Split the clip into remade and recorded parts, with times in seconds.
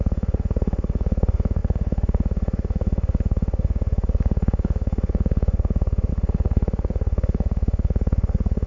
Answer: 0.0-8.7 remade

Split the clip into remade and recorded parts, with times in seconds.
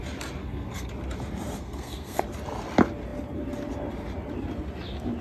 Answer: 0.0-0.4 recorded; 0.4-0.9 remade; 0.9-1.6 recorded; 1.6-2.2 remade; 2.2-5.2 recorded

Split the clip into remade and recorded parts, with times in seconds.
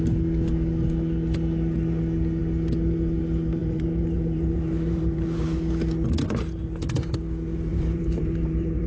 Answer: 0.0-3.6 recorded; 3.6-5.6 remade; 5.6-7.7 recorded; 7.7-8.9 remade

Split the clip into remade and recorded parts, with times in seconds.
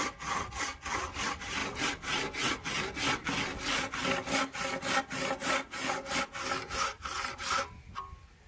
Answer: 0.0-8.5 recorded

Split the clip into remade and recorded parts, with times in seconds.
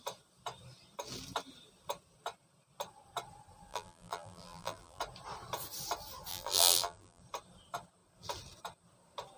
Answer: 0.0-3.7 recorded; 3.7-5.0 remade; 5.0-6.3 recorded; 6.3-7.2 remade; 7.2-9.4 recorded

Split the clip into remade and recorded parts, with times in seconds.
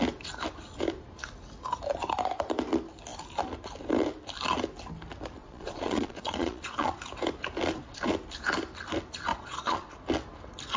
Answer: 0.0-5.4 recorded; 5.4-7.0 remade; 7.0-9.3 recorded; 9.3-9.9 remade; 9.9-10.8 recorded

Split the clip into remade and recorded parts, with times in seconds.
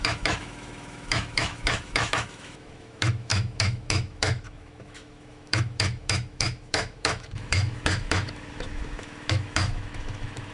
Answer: 0.0-10.5 remade